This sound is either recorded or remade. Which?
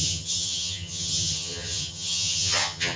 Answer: remade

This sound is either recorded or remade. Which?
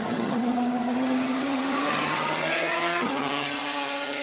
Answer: remade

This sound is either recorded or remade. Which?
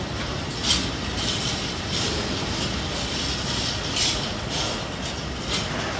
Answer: recorded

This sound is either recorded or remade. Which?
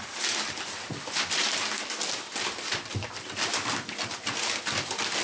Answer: recorded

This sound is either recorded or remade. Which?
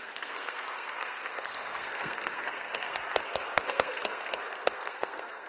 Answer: remade